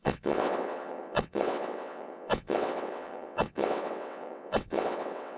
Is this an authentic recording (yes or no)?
no